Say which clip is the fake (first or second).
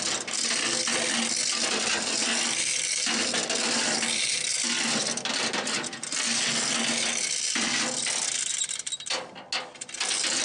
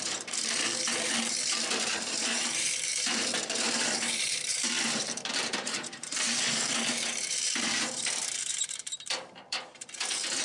second